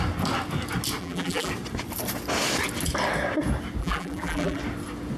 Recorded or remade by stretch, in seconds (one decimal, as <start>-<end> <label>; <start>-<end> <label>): 0.0-1.0 recorded; 1.0-1.5 remade; 1.5-3.8 recorded; 3.8-4.6 remade; 4.6-5.2 recorded